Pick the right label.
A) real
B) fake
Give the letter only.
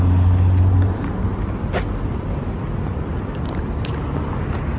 A